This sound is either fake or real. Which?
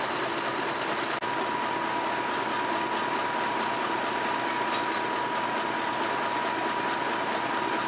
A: real